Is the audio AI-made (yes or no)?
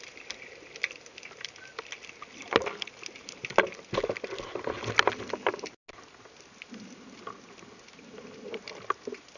no